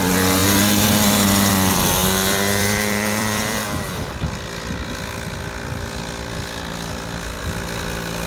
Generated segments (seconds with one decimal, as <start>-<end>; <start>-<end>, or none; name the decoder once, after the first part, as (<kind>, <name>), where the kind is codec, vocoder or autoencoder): 2.0-3.6 (vocoder, BigVGAN v2)